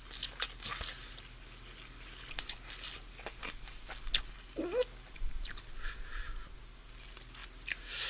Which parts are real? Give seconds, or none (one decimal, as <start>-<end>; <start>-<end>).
0.0-8.1